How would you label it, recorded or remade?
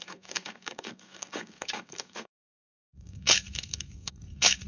remade